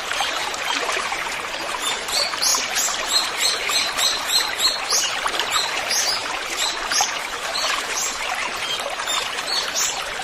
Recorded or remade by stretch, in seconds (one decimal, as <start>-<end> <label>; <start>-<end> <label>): 0.0-10.2 remade